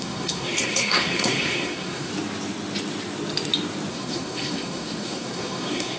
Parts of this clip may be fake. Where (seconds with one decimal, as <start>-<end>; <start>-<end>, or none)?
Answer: 0.0-2.1; 3.9-6.0